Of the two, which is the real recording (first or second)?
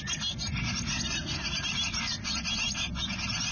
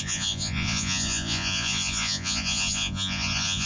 first